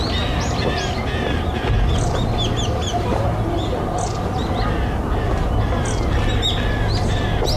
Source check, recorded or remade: recorded